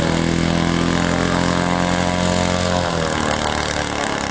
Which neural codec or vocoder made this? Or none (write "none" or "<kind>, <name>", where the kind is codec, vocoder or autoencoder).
none